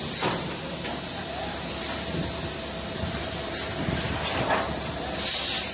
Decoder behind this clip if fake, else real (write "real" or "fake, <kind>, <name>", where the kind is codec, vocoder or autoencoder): fake, vocoder, BigVGAN v2